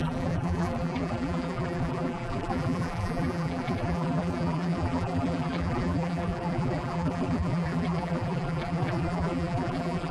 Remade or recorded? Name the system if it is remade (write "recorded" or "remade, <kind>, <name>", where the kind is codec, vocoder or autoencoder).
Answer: remade, vocoder, BigVGAN v2